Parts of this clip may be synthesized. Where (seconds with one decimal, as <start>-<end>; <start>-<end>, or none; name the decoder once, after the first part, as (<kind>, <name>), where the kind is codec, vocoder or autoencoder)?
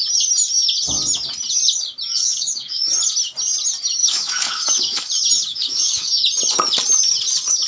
2.1-2.9 (autoencoder, DAC-VAE); 4.0-5.1; 5.5-6.2